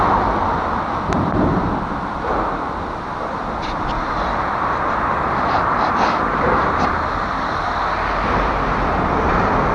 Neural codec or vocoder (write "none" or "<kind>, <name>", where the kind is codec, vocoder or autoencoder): vocoder, BigVGAN v2